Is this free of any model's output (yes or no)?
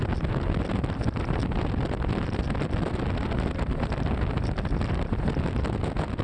yes